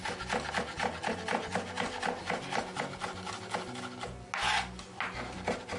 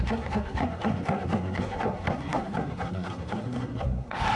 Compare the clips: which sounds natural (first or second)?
first